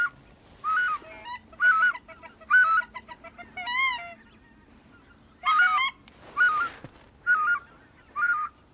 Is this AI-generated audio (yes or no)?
no